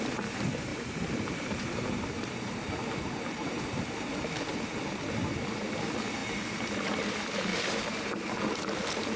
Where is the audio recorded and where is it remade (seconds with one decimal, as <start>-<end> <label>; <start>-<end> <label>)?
0.0-0.7 recorded; 0.7-2.6 remade; 2.6-7.5 recorded; 7.5-8.4 remade; 8.4-9.2 recorded